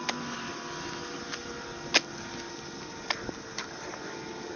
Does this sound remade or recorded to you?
recorded